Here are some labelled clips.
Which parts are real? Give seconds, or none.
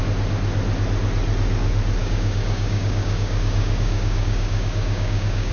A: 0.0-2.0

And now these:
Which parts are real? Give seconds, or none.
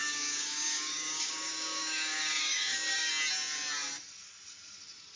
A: 3.1-5.2